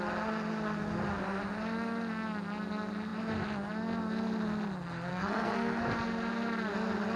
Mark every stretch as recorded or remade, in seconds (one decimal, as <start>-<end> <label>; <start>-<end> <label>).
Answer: 0.0-5.1 recorded; 5.1-5.8 remade; 5.8-7.2 recorded